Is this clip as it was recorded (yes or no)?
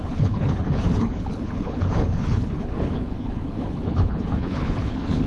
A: no